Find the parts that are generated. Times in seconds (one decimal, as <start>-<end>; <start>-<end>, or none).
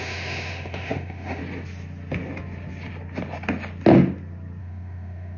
0.0-1.4; 4.6-5.4